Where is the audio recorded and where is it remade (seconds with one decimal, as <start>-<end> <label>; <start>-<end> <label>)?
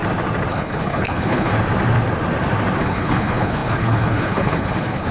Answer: 0.0-0.5 recorded; 0.5-1.5 remade; 1.5-2.8 recorded; 2.8-5.1 remade